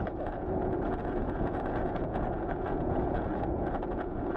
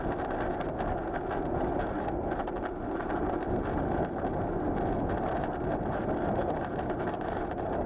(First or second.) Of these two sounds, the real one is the second